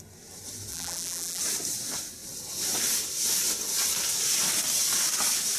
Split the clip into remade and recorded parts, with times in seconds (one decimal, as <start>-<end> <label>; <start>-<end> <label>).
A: 0.0-0.7 recorded; 0.7-1.4 remade; 1.4-5.6 recorded